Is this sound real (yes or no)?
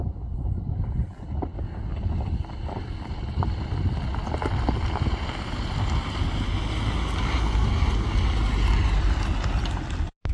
yes